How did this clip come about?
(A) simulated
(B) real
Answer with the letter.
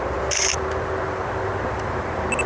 B